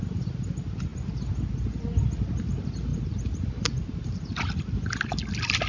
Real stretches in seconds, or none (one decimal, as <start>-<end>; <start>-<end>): 0.0-2.9; 4.3-5.7